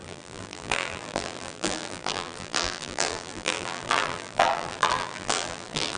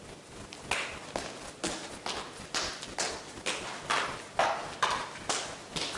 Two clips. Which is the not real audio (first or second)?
first